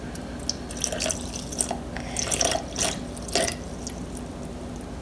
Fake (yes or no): no